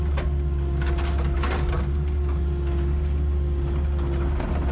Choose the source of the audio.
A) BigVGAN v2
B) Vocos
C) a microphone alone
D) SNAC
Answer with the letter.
C